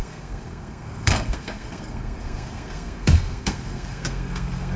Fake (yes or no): yes